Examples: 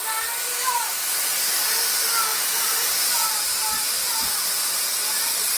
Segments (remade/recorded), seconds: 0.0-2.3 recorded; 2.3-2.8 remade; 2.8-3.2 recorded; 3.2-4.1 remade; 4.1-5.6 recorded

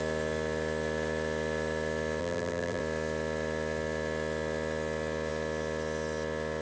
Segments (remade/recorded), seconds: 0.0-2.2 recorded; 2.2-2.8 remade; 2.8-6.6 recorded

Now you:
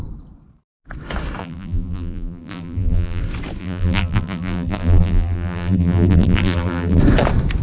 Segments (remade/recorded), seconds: 0.0-1.4 recorded; 1.4-3.2 remade; 3.2-3.6 recorded; 3.6-7.0 remade; 7.0-7.6 recorded

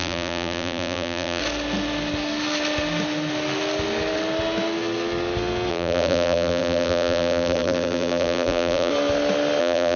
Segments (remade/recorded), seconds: 0.0-1.4 remade; 1.4-5.7 recorded; 5.7-8.9 remade; 8.9-9.6 recorded; 9.6-10.0 remade

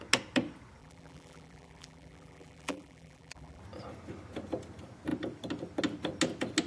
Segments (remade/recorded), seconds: 0.0-0.8 recorded; 0.8-3.6 remade; 3.6-6.7 recorded

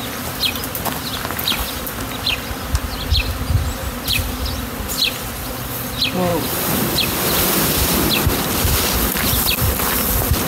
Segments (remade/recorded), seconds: 0.0-10.5 recorded

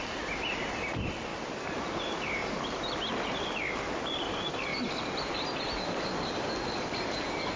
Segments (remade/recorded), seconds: 0.0-2.4 remade; 2.4-3.3 recorded; 3.3-7.6 remade

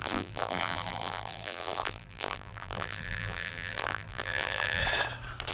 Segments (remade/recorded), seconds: 0.0-4.8 remade; 4.8-5.5 recorded